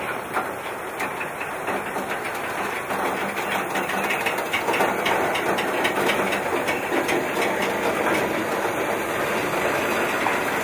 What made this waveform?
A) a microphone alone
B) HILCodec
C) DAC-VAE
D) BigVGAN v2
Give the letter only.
A